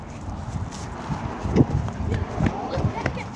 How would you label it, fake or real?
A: real